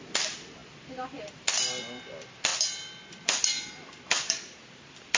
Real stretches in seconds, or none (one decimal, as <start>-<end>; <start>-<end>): 2.5-3.1